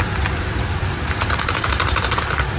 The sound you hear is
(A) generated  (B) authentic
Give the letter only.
A